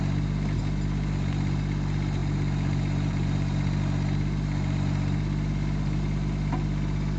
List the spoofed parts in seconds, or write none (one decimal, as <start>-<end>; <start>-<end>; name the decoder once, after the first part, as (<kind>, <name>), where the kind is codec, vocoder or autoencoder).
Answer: 2.2-3.8 (vocoder, BigVGAN v2)